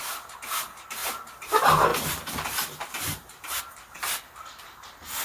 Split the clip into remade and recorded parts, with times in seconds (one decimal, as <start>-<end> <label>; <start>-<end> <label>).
0.0-5.2 recorded